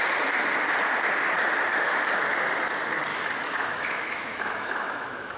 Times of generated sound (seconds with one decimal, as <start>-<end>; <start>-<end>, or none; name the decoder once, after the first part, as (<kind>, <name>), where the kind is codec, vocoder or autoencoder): 3.1-5.4 (autoencoder, DAC-VAE)